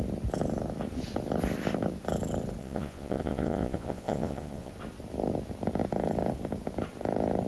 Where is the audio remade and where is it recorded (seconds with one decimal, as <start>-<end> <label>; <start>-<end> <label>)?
0.0-2.6 recorded; 2.6-4.7 remade; 4.7-7.5 recorded